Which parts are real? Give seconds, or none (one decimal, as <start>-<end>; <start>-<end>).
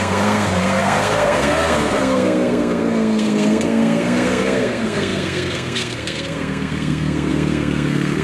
none